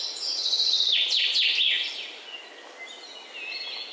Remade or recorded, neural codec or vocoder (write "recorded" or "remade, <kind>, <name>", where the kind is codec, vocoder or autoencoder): recorded